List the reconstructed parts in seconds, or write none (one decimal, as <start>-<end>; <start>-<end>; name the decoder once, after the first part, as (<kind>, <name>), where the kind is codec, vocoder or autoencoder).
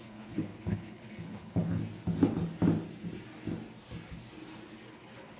0.0-1.8 (codec, HILCodec); 4.9-5.4